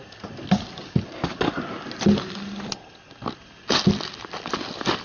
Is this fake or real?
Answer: real